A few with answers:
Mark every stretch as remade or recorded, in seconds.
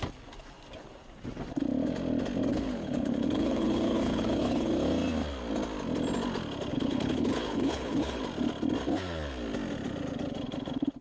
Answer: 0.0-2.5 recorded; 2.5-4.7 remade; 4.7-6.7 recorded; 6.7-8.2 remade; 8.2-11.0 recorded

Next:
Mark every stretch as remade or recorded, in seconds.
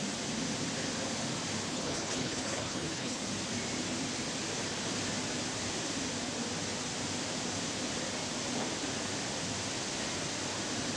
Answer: 0.0-1.7 recorded; 1.7-3.2 remade; 3.2-11.0 recorded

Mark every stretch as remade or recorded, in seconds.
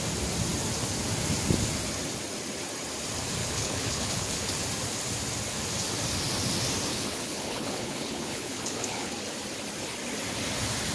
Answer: 0.0-3.4 recorded; 3.4-4.5 remade; 4.5-6.9 recorded; 6.9-9.1 remade; 9.1-10.9 recorded